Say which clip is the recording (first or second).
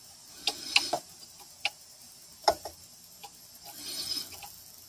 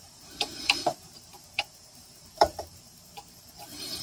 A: first